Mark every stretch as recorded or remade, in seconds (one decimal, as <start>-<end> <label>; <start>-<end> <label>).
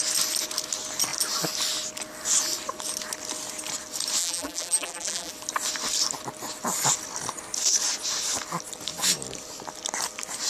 0.0-4.2 recorded; 4.2-5.3 remade; 5.3-10.5 recorded